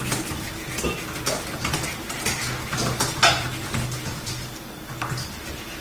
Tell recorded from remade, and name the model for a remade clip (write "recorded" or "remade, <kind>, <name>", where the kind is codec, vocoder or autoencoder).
recorded